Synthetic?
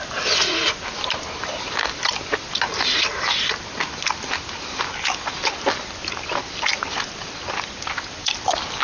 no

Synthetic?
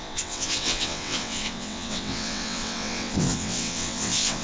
yes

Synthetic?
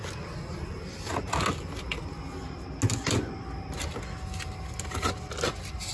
no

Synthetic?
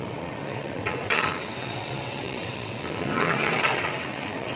yes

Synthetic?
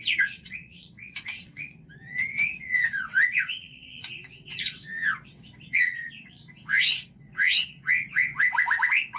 yes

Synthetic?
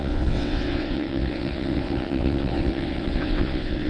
yes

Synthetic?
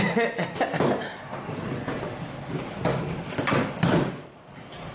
no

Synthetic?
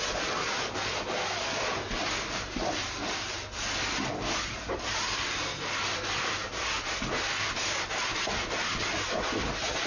no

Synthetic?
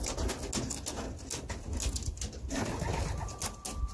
no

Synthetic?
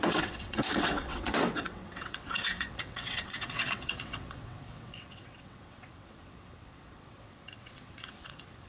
yes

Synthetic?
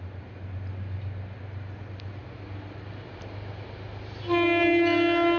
no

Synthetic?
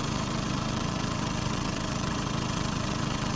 yes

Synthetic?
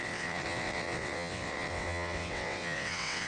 yes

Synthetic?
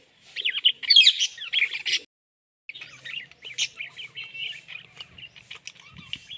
no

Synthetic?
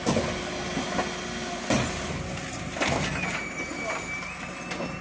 no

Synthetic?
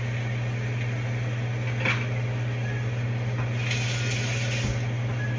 no